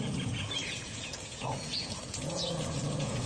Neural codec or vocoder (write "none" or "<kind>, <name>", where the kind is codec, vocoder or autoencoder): vocoder, Vocos